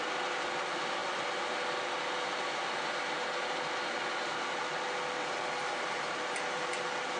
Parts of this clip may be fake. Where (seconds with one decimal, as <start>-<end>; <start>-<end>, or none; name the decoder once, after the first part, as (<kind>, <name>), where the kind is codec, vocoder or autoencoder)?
none